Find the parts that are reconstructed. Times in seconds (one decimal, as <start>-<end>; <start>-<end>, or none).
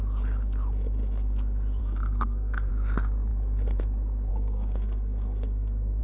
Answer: 1.8-2.7; 4.3-6.0